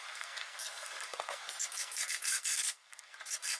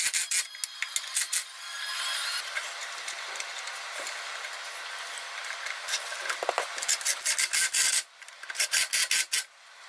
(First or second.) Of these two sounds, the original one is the second